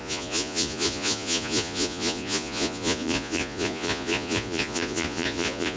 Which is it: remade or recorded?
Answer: remade